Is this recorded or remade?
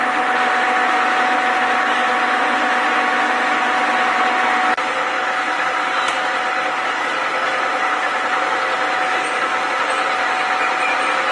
recorded